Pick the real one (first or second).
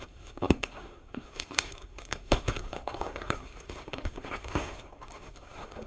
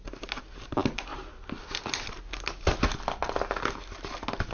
second